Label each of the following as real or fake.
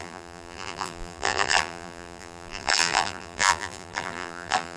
fake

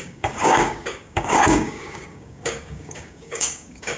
fake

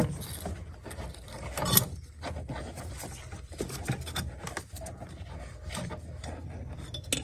real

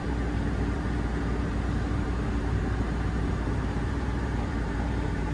fake